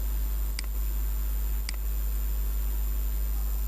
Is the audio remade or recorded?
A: recorded